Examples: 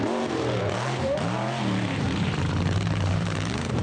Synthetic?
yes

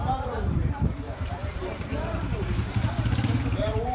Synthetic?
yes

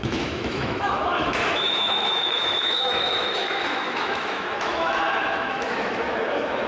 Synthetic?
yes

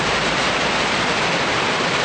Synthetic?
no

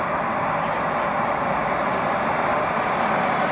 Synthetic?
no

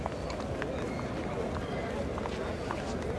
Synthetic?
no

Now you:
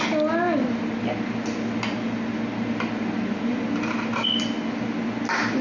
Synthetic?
no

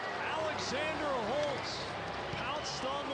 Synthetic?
no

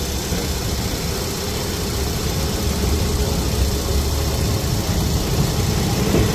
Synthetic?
no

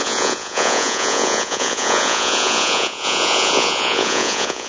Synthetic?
yes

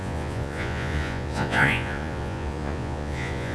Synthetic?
yes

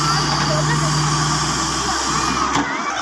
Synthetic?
no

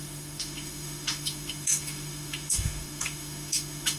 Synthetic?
yes